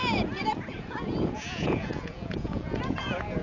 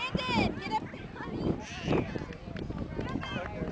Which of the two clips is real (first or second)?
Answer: second